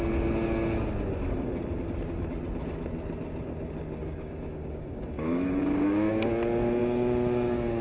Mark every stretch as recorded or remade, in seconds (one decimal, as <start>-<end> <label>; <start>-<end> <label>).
0.0-4.0 recorded; 4.0-6.1 remade; 6.1-6.8 recorded; 6.8-7.8 remade